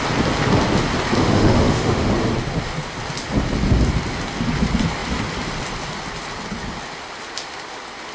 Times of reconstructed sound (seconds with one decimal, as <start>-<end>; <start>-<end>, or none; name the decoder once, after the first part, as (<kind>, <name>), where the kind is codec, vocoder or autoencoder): 1.2-2.1 (autoencoder, DAC-VAE)